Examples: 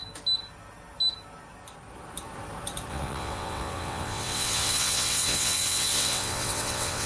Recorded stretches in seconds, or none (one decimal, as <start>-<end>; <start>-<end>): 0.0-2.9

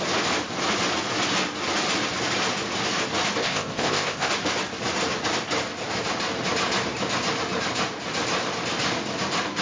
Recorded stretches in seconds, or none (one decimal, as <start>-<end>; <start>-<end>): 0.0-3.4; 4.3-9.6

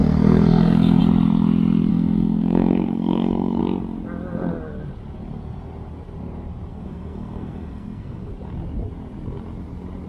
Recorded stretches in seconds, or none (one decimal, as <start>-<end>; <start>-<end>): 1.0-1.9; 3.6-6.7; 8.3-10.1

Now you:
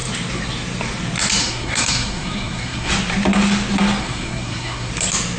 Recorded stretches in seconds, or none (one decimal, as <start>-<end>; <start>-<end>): 0.0-1.4; 2.9-4.0; 4.9-5.4

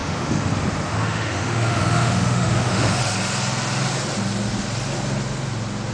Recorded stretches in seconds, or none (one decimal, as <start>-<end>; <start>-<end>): 0.5-0.9; 3.0-5.9